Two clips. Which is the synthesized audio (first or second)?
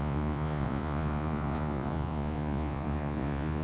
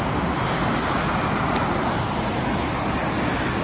first